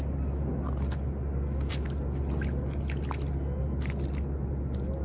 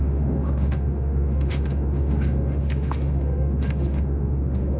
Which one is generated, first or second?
second